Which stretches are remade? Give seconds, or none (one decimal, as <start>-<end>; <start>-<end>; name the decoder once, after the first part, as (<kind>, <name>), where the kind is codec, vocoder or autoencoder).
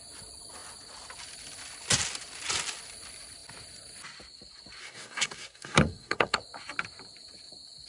4.8-6.4 (codec, SNAC)